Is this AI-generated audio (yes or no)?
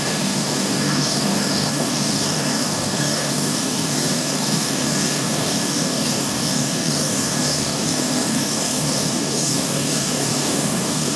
yes